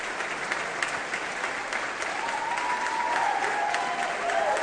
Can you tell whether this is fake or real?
real